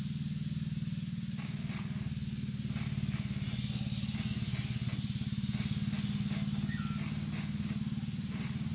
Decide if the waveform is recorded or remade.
recorded